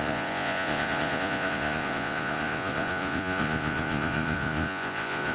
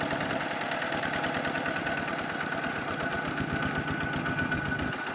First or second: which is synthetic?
first